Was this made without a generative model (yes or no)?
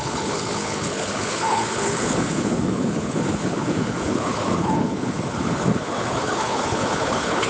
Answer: no